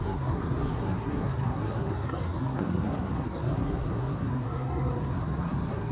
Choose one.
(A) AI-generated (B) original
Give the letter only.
A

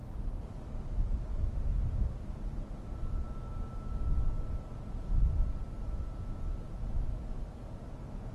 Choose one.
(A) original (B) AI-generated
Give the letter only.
A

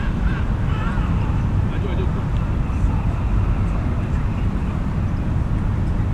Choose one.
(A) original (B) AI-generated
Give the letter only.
A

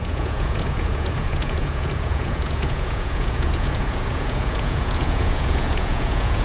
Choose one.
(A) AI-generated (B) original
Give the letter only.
A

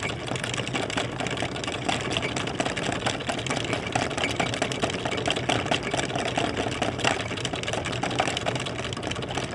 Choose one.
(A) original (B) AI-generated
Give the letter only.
A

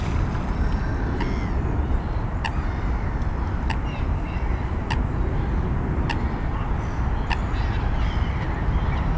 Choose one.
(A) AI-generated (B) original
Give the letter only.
B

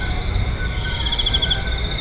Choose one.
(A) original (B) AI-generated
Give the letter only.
A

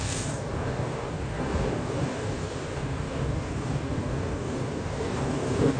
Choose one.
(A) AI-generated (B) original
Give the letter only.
A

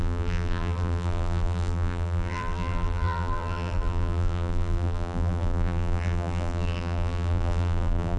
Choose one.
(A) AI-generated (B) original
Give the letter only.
A